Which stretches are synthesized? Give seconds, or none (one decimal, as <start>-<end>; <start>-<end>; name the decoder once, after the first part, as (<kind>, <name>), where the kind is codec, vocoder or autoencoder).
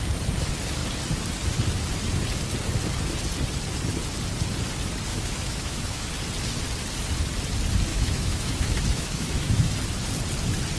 5.1-6.1 (autoencoder, DAC-VAE); 7.9-9.7